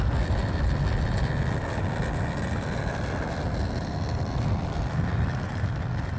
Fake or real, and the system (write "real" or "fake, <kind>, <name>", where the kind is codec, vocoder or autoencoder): real